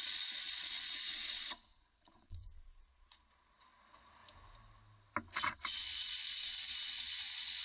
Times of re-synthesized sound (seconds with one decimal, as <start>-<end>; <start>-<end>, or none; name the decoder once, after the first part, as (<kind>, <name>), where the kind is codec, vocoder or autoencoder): 0.0-4.2 (vocoder, Vocos); 5.4-7.6